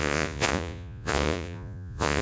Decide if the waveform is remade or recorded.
remade